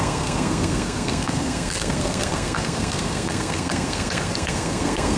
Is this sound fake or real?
fake